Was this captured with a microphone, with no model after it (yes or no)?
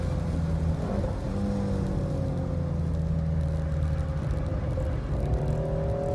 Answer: yes